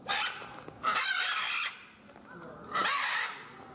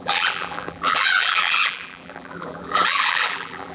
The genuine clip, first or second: first